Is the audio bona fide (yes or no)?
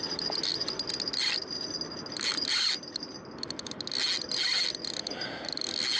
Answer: yes